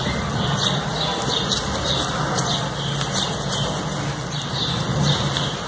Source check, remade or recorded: recorded